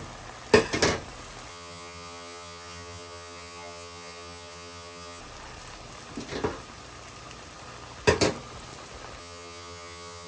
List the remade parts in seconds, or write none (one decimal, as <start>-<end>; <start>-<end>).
1.5-5.2; 9.2-10.3